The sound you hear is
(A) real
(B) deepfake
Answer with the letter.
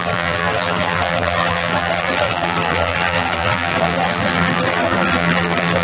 B